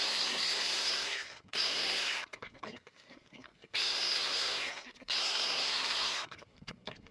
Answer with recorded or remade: remade